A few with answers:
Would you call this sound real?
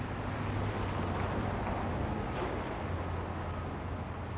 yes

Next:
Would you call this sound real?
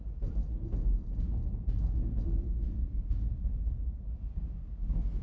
yes